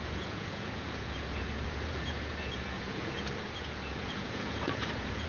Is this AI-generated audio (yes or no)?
yes